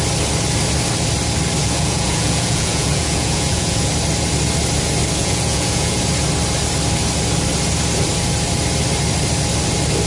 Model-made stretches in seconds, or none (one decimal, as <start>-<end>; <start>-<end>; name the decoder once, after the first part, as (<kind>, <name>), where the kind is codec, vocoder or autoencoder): 1.6-3.9 (vocoder, Vocos); 5.2-6.0